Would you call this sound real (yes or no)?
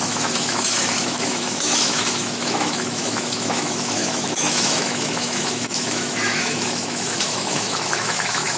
no